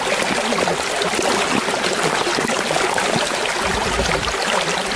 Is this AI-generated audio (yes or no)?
no